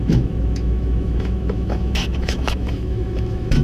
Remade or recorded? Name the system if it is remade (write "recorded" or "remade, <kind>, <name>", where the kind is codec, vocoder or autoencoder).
remade, autoencoder, DAC-VAE